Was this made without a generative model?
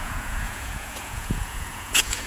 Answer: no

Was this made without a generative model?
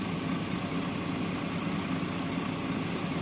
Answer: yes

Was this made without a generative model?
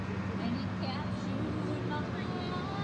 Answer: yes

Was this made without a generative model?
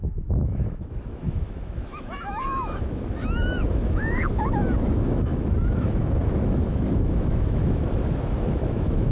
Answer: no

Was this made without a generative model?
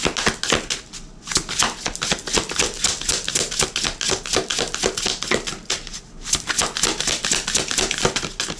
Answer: yes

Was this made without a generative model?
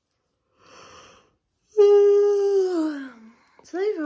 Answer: yes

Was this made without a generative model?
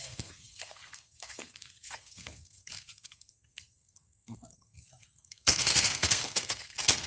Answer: no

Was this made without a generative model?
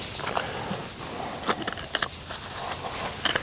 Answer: yes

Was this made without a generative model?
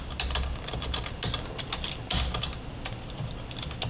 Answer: yes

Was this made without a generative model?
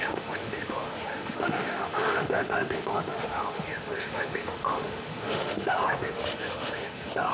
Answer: no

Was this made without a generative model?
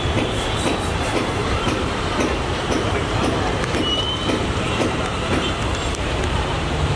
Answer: no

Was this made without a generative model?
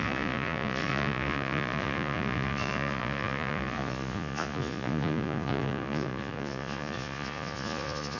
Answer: no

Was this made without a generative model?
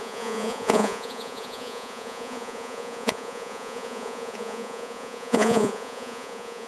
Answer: no